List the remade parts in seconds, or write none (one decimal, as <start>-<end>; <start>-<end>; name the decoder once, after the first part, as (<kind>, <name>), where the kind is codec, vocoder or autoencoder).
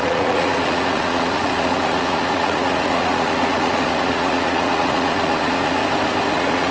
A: 0.0-5.8 (vocoder, Vocos); 6.3-6.7